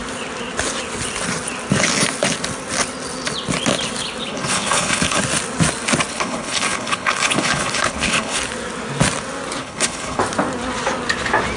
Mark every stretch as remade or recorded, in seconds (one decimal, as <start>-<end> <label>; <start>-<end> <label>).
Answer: 0.0-4.3 recorded; 4.3-5.2 remade; 5.2-6.1 recorded; 6.1-8.4 remade; 8.4-9.6 recorded; 9.6-10.2 remade; 10.2-11.6 recorded